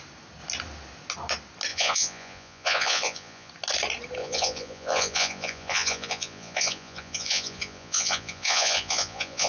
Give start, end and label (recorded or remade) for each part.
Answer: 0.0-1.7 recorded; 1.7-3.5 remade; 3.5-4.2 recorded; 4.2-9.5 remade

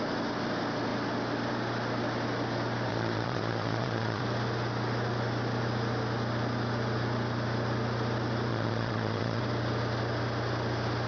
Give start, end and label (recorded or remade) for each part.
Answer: 0.0-2.9 recorded; 2.9-4.2 remade; 4.2-8.5 recorded; 8.5-9.4 remade; 9.4-11.1 recorded

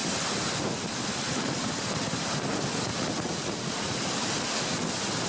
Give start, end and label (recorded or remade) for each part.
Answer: 0.0-2.9 recorded; 2.9-4.0 remade; 4.0-5.3 recorded

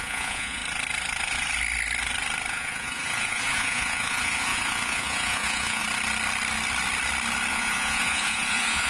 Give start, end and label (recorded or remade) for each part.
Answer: 0.0-0.6 remade; 0.6-2.5 recorded; 2.5-5.8 remade; 5.8-7.5 recorded; 7.5-8.9 remade

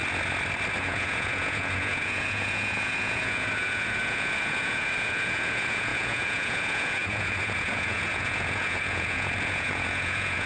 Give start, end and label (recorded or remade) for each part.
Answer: 0.0-0.8 recorded; 0.8-10.5 remade

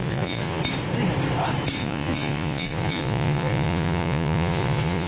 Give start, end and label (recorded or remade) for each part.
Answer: 0.0-0.6 remade; 0.6-1.8 recorded; 1.8-5.1 remade